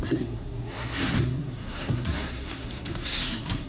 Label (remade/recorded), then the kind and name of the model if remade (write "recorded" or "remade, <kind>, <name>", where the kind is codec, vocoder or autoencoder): remade, codec, SNAC